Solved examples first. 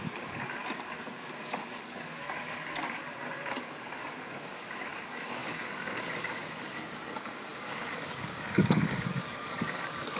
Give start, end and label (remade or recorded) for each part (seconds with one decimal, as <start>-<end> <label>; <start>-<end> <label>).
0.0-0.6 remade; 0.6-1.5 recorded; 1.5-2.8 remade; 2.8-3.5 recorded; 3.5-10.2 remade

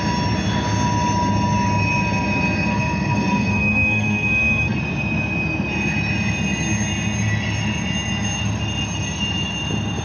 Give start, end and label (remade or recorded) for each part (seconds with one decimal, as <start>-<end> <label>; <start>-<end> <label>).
0.0-2.7 recorded; 2.7-4.8 remade; 4.8-10.0 recorded

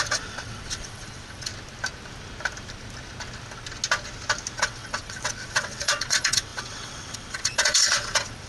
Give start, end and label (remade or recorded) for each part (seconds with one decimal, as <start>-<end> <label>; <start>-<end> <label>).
0.0-1.5 remade; 1.5-4.6 recorded; 4.6-8.5 remade